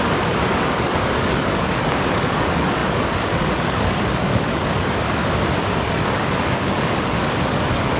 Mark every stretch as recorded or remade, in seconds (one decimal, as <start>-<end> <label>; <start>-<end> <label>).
0.0-5.2 remade; 5.2-5.8 recorded; 5.8-8.0 remade